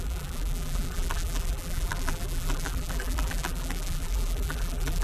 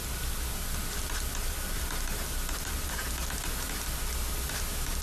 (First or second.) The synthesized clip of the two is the first